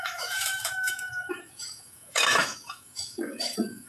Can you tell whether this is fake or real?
fake